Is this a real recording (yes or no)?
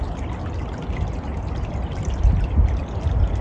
yes